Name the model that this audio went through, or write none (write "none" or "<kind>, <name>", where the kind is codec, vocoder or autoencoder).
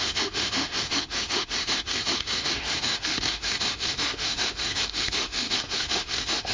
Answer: autoencoder, DAC-VAE